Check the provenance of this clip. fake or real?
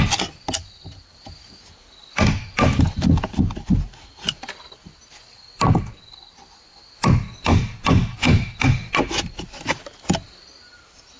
real